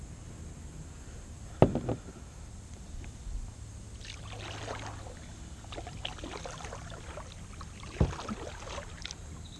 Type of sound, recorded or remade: recorded